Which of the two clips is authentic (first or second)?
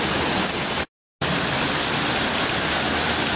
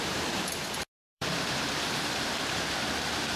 first